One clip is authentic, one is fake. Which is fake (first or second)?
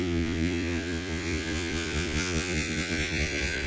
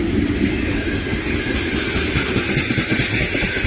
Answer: first